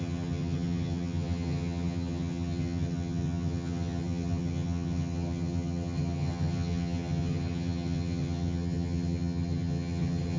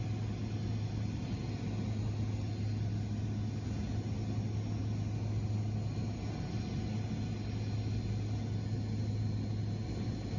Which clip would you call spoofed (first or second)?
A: first